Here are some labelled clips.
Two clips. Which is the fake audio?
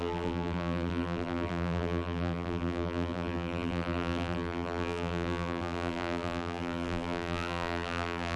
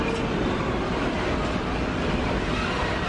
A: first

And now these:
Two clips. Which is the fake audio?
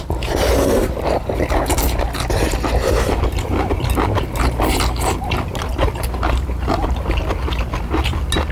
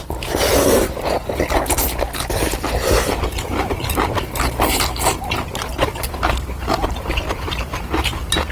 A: second